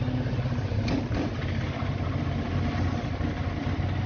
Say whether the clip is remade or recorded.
recorded